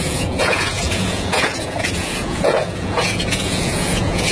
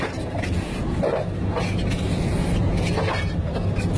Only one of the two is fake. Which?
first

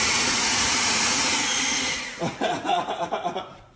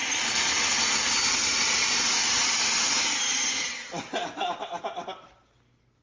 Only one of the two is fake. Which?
first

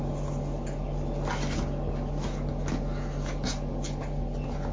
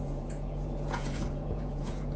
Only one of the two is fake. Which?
second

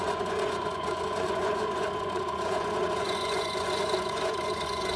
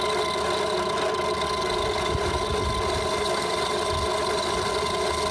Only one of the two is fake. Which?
first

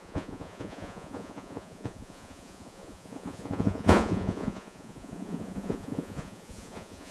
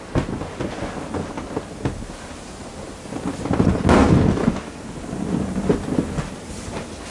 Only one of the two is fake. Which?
first